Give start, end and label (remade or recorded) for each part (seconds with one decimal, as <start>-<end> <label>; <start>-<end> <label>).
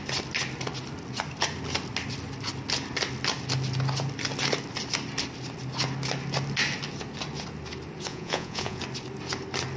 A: 0.0-8.1 recorded; 8.1-8.8 remade; 8.8-9.8 recorded